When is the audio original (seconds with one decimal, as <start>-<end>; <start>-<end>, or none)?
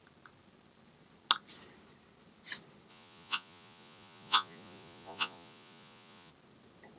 0.0-2.9; 6.3-7.0